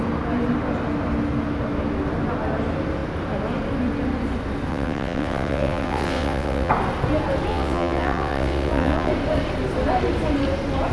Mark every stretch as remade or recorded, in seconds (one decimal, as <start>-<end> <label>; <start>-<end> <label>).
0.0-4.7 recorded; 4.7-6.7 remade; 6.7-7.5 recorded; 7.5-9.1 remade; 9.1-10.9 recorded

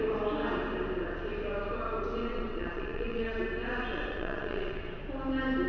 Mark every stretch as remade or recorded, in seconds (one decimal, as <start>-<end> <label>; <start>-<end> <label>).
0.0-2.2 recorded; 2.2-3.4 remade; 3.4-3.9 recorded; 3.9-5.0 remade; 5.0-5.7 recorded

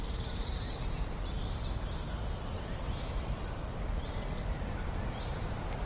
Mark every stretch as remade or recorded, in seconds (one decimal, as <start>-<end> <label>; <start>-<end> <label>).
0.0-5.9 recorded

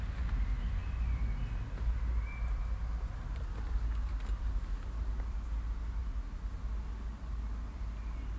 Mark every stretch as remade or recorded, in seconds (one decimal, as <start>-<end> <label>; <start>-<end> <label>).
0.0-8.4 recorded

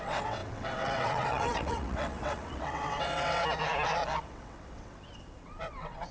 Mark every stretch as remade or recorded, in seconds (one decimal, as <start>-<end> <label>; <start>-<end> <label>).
0.0-3.4 remade; 3.4-4.2 recorded; 4.2-6.1 remade

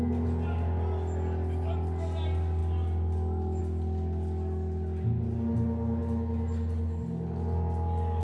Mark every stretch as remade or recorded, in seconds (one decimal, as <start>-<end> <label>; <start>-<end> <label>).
0.0-8.2 recorded